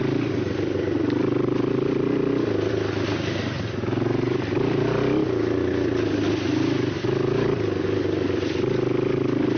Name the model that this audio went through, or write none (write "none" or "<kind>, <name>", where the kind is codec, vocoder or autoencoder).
none